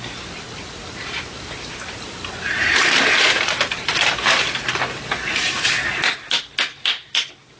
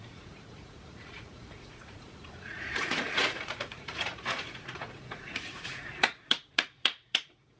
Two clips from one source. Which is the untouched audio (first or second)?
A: first